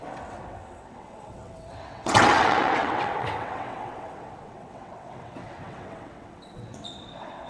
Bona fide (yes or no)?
no